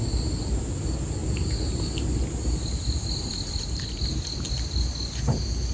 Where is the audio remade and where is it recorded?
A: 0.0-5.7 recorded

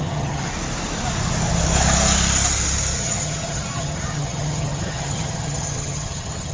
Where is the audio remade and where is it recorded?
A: 0.0-0.5 remade; 0.5-3.0 recorded; 3.0-6.5 remade